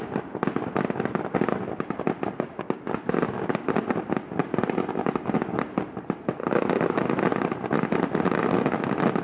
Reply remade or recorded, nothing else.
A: recorded